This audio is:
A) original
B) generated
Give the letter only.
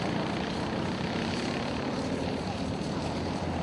B